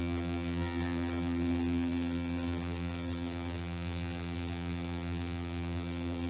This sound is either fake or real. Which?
fake